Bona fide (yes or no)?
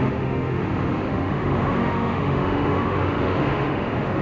no